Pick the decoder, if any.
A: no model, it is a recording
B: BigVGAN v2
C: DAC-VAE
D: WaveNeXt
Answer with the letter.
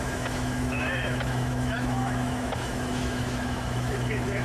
C